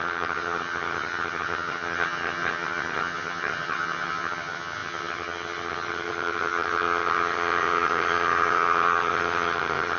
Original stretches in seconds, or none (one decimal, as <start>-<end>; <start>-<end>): none